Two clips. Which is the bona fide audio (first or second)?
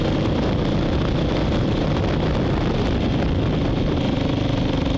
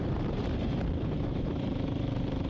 first